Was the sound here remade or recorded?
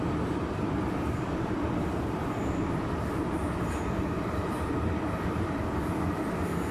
remade